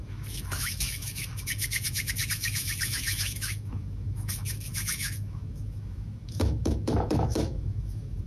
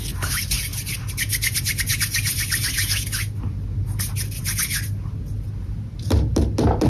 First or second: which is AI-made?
first